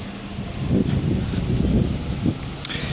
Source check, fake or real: real